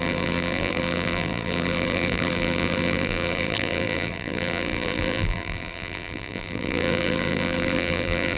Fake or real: fake